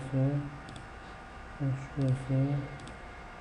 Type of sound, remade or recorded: remade